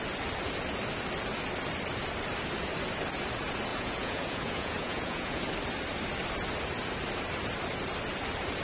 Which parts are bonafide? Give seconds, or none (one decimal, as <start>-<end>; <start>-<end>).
0.0-3.7; 5.4-8.6